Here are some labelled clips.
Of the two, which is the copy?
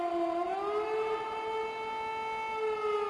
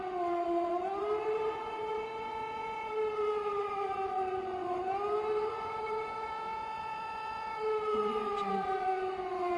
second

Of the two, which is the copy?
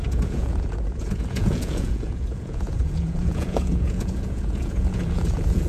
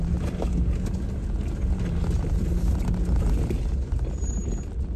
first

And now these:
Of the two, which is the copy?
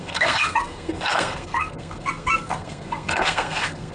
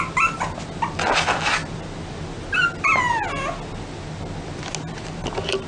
first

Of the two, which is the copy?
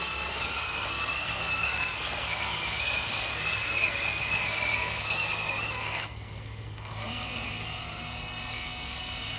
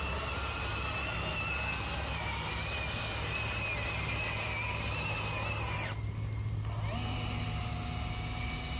first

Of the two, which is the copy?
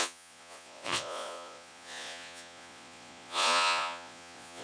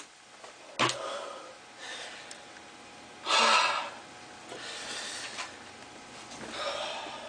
first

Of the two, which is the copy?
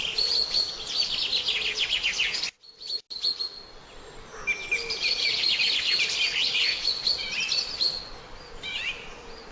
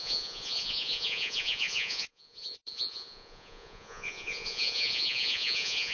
second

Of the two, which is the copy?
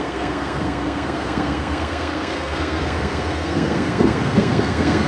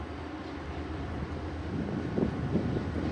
first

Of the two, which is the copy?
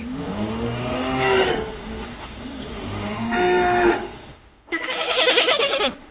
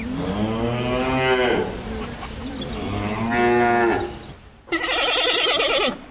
first